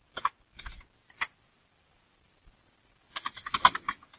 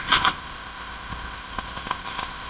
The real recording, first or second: first